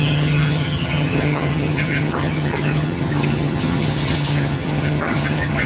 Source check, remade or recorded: remade